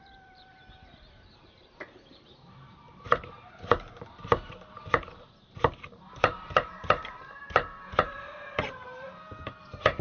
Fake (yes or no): yes